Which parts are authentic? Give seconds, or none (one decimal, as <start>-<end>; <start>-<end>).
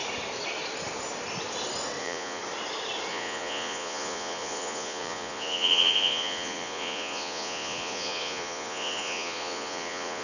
0.0-2.0; 2.4-3.1